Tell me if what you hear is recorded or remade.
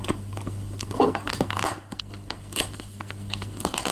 remade